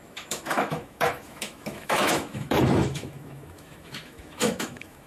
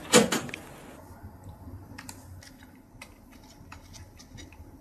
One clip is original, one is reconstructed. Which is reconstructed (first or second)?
first